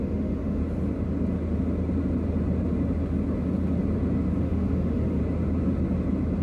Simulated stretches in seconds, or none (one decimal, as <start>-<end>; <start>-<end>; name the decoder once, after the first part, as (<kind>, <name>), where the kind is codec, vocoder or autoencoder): 0.0-0.6 (autoencoder, DAC-VAE); 4.4-5.2